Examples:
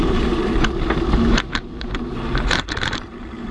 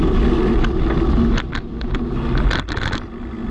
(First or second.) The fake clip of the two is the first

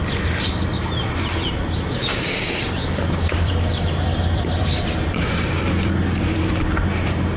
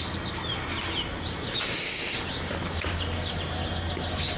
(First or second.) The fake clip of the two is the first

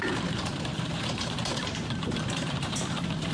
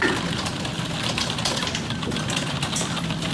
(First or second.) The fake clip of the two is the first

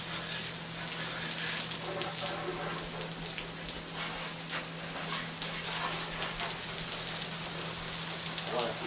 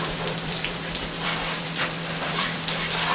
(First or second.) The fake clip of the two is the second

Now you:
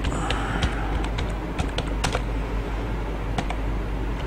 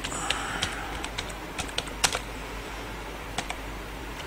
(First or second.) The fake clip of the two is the second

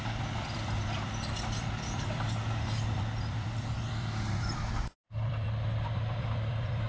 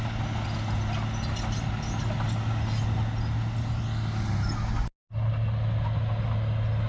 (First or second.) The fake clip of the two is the first